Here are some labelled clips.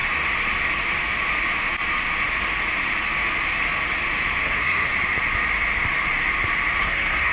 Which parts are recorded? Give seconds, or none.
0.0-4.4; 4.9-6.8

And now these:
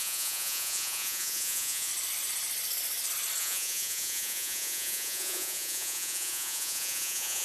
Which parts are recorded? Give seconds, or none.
1.9-3.4

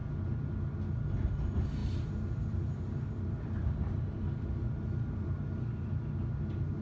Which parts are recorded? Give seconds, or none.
0.0-1.8; 5.9-6.8

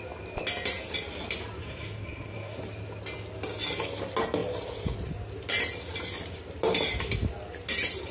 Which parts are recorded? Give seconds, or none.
0.0-1.6; 2.6-8.1

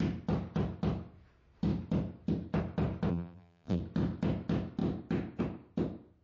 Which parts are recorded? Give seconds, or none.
0.0-3.1; 3.8-6.2